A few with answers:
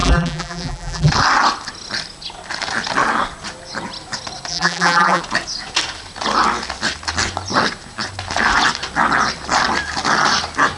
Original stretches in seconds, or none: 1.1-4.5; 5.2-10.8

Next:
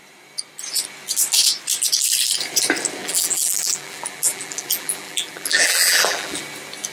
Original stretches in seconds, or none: 0.0-3.0; 6.4-6.9

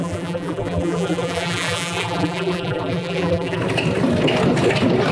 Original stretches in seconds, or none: 3.6-5.1

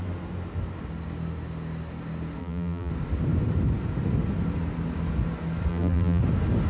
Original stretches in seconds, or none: 0.0-2.4; 2.9-5.7; 6.2-6.7

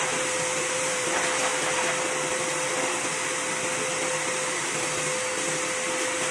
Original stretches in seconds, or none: 0.0-0.5; 1.1-6.3

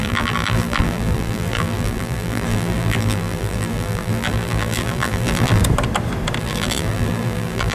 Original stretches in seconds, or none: 5.6-6.4